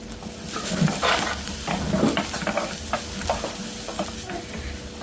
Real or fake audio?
real